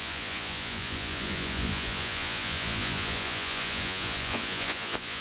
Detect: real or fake fake